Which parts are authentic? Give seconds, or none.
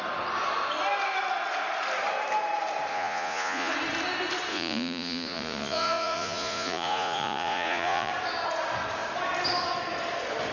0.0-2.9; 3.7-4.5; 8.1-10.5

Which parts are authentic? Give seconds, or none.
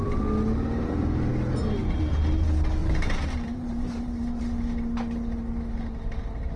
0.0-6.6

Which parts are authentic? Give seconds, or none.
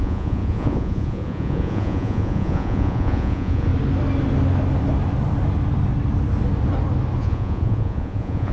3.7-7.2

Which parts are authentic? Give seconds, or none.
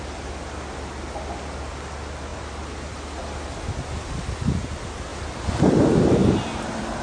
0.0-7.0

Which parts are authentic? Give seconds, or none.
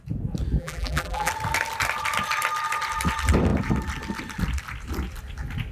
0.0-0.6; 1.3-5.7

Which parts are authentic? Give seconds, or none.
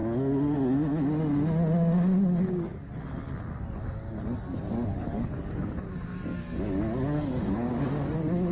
0.0-4.7